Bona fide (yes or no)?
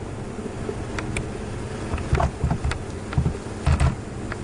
yes